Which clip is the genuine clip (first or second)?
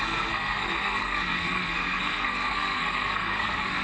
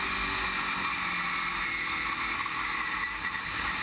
second